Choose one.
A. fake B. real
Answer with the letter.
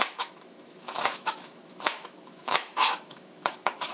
A